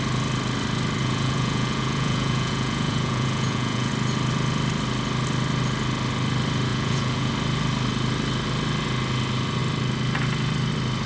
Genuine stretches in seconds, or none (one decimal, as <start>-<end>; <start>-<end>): 0.0-1.0; 3.9-6.7; 7.3-11.1